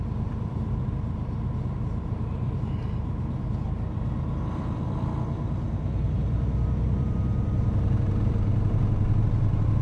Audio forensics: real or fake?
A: fake